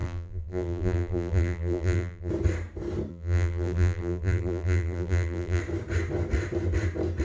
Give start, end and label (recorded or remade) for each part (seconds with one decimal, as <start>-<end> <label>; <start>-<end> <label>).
0.0-2.3 remade; 2.3-3.1 recorded; 3.1-5.6 remade; 5.6-7.2 recorded